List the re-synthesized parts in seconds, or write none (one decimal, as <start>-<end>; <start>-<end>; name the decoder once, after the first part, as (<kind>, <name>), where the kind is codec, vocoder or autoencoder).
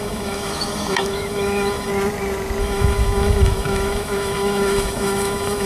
0.0-1.9 (autoencoder, DAC-VAE); 2.6-5.7